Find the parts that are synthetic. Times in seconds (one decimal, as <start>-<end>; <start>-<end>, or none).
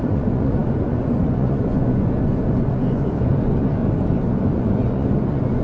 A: 0.0-3.8; 4.5-5.6